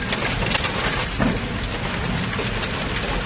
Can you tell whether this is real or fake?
real